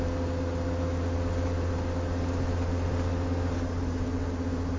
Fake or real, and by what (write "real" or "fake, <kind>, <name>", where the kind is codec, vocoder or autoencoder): real